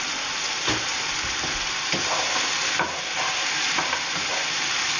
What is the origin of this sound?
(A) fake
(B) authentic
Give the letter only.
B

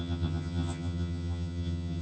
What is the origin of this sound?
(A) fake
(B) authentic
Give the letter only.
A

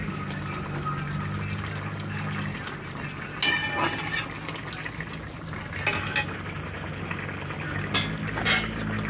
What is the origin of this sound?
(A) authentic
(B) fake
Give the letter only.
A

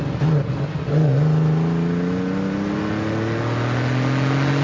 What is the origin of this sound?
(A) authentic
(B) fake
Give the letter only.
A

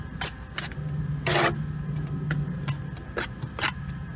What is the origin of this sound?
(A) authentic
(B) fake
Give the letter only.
A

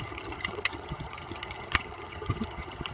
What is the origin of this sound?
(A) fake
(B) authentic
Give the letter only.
A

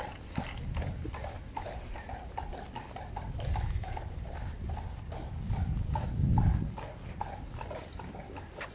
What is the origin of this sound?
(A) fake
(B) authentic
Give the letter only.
B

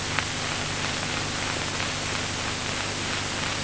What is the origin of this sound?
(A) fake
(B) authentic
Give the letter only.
B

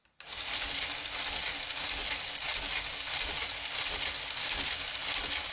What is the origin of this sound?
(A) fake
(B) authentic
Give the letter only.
B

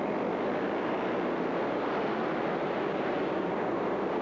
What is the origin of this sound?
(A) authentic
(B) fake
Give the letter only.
A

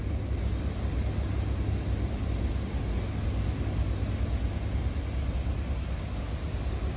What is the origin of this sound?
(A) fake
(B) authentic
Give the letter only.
B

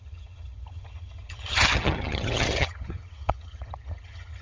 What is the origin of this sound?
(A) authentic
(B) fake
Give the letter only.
B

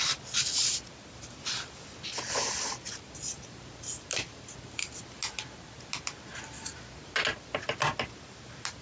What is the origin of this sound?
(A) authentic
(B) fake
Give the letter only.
A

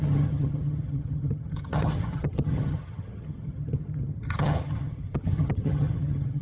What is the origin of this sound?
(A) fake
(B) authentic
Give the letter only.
A